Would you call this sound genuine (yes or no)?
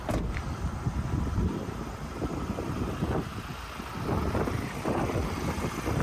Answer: yes